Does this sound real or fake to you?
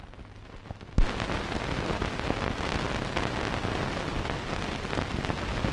real